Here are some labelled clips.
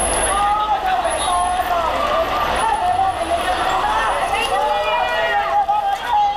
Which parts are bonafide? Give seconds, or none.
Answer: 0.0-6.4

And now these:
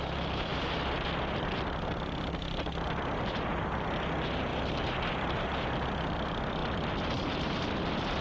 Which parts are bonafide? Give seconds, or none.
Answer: 0.0-4.5; 5.5-8.2